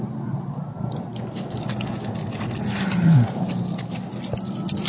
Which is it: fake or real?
real